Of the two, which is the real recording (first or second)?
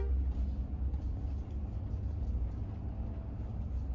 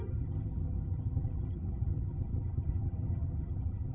first